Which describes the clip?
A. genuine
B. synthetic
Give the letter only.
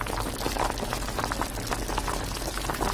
A